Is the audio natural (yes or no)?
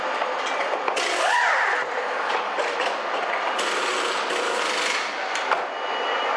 yes